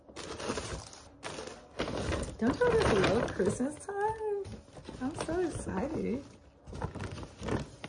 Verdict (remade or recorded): recorded